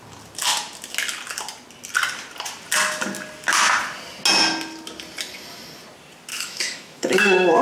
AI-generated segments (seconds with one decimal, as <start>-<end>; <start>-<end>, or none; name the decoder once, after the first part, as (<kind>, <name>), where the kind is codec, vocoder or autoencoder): 6.3-7.6 (autoencoder, DAC-VAE)